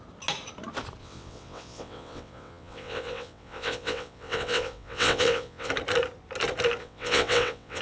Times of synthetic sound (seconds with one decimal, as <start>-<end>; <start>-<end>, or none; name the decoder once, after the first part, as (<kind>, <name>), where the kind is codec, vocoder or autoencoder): 1.0-5.7 (vocoder, WaveNeXt); 6.8-7.8